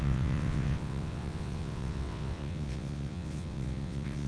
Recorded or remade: remade